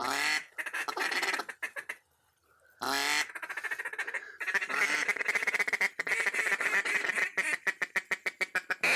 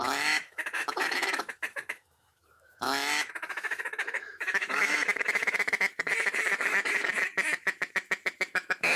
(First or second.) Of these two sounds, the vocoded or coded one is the second